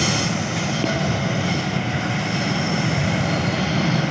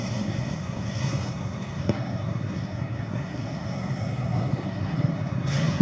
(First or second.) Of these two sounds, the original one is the first